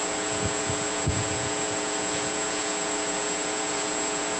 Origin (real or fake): fake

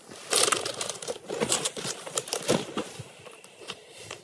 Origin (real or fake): real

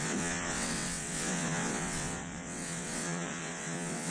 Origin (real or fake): fake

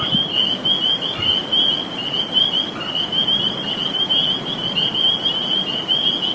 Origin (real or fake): real